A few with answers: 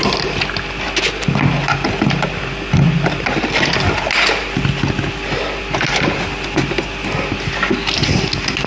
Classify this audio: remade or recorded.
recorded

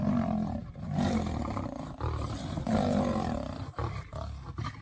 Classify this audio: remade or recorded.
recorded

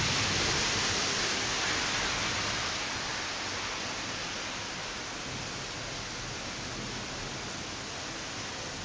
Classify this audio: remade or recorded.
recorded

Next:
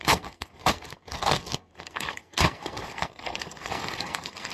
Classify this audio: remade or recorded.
remade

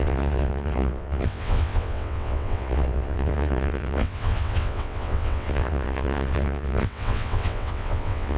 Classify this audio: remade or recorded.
remade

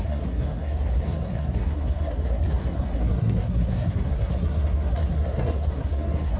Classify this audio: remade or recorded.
remade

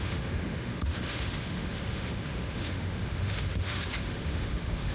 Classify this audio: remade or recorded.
remade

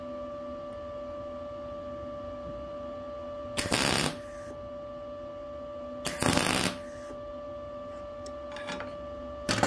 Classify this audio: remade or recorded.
recorded